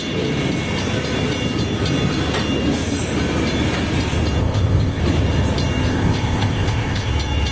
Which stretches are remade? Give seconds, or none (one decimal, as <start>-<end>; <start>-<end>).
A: 4.4-5.0; 5.9-7.1